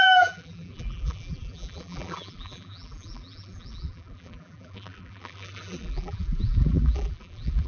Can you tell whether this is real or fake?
fake